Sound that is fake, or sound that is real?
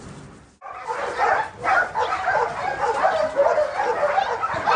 real